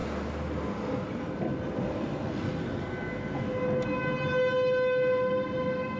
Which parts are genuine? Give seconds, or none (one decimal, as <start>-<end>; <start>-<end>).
0.0-6.0